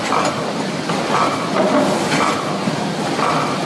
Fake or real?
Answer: real